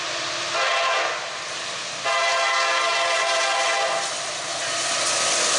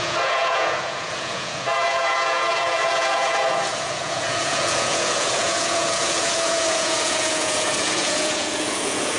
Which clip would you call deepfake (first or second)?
second